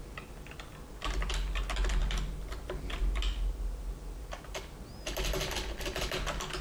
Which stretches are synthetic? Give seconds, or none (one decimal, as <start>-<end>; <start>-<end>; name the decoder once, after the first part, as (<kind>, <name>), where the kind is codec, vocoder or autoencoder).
none